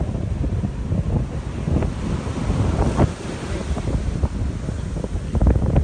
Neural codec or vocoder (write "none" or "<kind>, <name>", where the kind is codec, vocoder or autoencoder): none